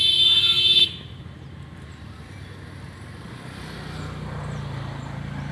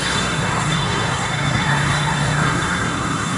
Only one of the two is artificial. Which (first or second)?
second